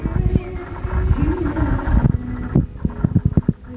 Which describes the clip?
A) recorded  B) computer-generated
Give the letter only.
A